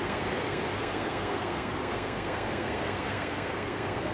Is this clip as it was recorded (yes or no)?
no